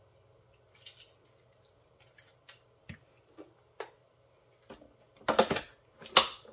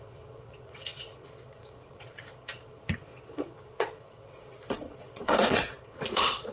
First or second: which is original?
first